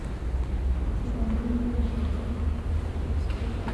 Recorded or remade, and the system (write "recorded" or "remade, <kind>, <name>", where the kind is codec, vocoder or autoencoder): recorded